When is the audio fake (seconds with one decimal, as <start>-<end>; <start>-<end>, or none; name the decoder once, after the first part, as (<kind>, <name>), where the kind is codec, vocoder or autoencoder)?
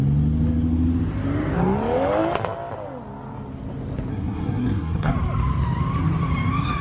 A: 4.1-5.1 (codec, SNAC)